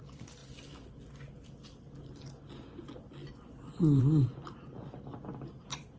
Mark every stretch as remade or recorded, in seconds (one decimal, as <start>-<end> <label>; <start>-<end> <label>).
0.0-0.4 remade; 0.4-4.0 recorded; 4.0-6.0 remade